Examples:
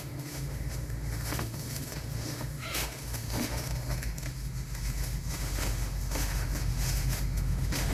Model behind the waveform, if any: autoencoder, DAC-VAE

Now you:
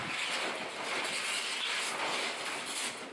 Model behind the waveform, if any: none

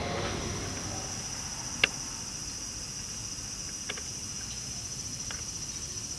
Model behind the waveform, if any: none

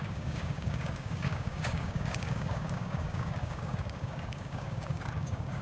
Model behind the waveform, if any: codec, DAC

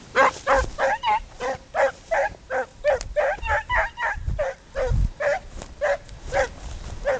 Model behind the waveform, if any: none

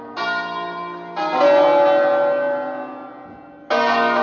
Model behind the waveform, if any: none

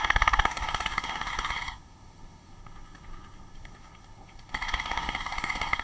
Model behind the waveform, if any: codec, SNAC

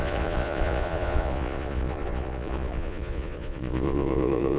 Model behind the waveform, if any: vocoder, Vocos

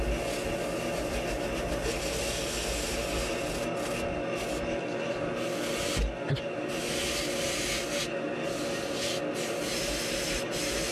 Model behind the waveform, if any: none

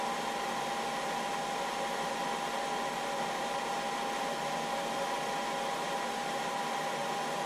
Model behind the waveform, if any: none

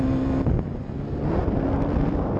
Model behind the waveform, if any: none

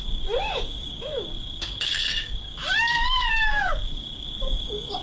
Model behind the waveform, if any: codec, DAC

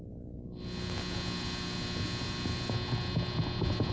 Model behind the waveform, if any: none